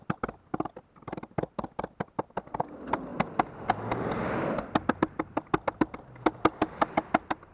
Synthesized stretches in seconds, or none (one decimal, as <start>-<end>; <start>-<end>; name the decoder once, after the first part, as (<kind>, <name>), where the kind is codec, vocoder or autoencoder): none